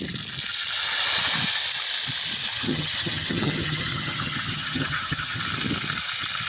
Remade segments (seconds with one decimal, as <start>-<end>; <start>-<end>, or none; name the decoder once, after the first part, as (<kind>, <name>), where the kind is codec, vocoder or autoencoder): 2.5-5.4 (vocoder, HiFi-GAN)

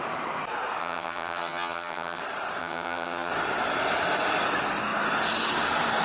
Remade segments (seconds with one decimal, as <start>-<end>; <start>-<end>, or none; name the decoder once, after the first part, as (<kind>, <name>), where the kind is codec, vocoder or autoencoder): 0.8-2.2 (vocoder, HiFi-GAN); 2.6-3.3

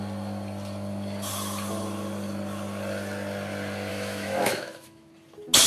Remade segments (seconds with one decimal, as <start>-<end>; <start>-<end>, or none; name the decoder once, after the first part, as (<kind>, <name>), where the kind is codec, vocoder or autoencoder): 3.9-5.1 (autoencoder, DAC-VAE)

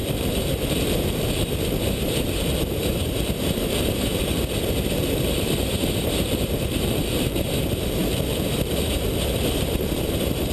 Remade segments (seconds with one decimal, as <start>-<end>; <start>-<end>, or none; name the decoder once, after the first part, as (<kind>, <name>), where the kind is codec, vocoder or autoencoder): 0.0-4.1 (vocoder, BigVGAN v2); 4.7-10.5

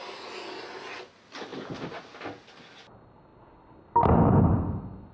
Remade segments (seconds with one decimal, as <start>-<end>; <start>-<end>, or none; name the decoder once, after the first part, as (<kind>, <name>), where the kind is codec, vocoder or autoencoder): none